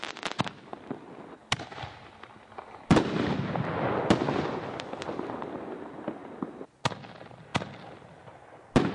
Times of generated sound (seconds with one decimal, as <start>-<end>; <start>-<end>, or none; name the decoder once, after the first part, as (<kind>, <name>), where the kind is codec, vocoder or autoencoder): none